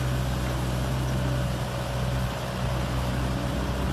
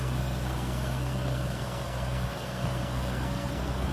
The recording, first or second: first